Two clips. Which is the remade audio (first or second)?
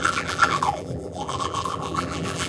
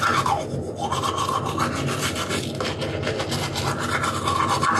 first